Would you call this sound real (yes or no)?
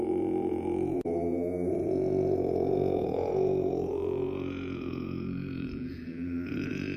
no